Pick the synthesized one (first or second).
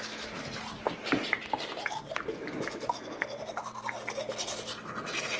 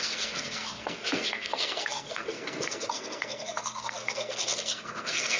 second